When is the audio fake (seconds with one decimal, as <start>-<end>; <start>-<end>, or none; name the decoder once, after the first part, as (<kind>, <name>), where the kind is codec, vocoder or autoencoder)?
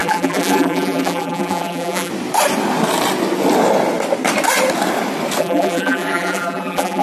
0.0-2.1 (vocoder, BigVGAN v2); 5.4-7.0